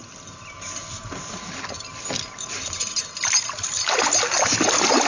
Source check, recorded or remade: recorded